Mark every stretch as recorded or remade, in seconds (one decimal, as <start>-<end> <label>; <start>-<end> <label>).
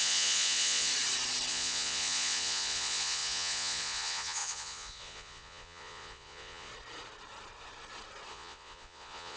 0.0-0.9 remade; 0.9-1.5 recorded; 1.5-6.7 remade; 6.7-8.3 recorded; 8.3-9.4 remade